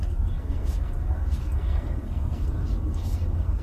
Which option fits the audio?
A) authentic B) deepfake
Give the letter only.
B